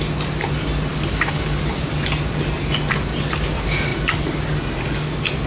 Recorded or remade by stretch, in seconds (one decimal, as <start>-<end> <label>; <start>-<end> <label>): 0.0-0.9 recorded; 0.9-1.9 remade; 1.9-5.5 recorded